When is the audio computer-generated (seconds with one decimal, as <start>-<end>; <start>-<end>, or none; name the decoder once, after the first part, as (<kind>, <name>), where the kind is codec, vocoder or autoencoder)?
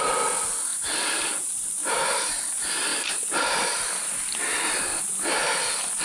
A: 0.7-2.2 (vocoder, BigVGAN v2); 2.9-4.4